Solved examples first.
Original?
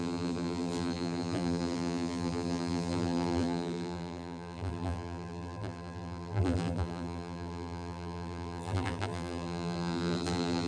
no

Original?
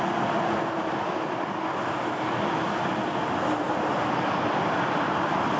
yes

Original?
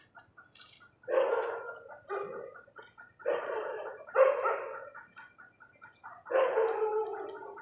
yes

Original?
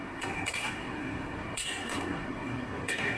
no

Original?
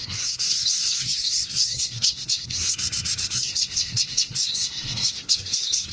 no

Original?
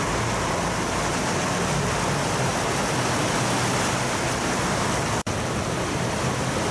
yes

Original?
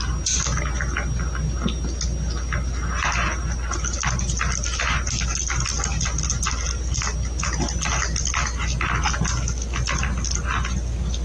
yes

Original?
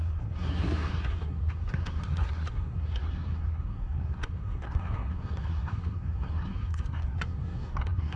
no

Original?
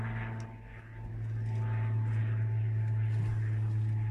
yes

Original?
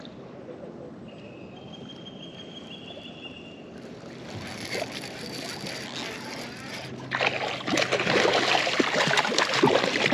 yes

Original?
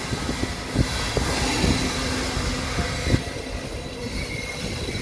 yes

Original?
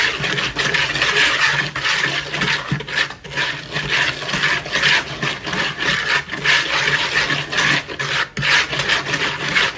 yes